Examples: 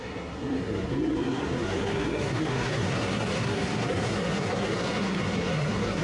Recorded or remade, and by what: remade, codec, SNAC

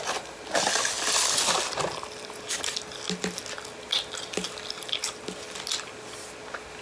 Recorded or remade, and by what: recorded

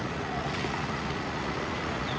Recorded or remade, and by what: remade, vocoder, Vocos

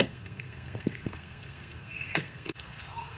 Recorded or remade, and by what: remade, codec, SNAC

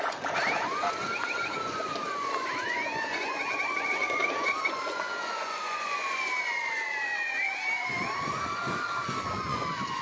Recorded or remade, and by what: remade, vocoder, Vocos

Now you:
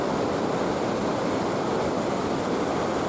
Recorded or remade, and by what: recorded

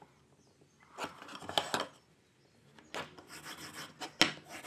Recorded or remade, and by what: recorded